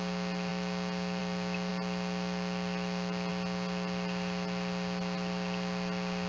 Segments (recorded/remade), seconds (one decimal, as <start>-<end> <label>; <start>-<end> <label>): 0.0-6.3 recorded